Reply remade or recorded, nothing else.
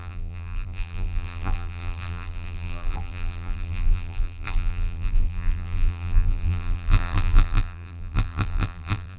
remade